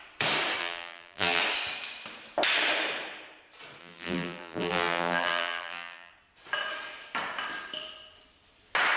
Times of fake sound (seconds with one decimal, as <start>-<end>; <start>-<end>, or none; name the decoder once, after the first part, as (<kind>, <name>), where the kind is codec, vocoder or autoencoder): 0.6-1.4 (vocoder, BigVGAN v2); 3.8-6.1